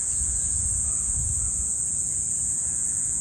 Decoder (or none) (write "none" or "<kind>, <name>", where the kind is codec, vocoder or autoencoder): vocoder, Vocos